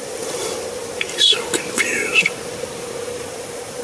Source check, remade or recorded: recorded